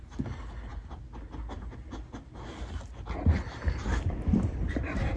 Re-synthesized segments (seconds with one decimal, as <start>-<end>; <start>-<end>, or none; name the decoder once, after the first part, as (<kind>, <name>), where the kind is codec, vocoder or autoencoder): none